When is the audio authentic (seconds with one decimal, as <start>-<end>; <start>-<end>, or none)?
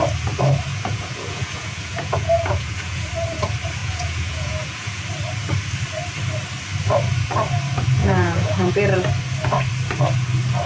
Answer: 0.0-0.7; 3.1-3.8; 5.0-8.0; 8.7-10.7